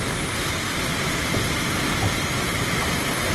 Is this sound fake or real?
real